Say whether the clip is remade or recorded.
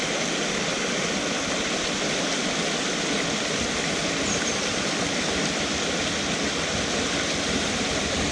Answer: recorded